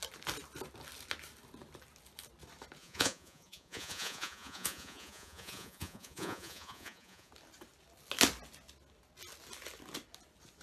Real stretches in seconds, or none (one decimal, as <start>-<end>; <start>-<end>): 0.0-2.8; 7.3-10.6

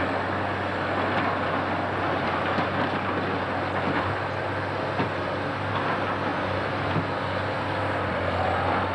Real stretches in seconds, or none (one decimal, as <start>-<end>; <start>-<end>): 0.0-8.9

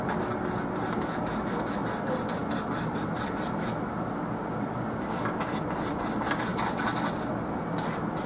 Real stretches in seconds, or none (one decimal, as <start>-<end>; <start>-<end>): 0.0-8.3